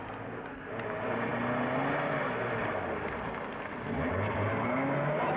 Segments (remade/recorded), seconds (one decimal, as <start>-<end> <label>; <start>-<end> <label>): 0.0-5.4 recorded